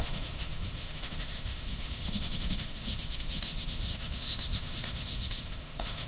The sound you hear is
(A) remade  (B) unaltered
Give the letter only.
A